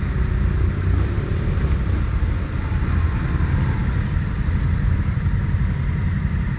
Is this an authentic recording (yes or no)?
yes